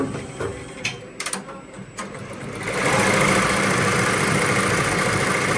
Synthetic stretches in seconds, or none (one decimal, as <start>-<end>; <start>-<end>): none